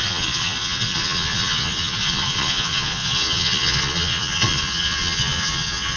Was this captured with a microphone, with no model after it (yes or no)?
no